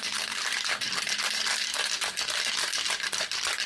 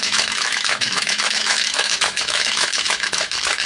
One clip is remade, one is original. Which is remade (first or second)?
second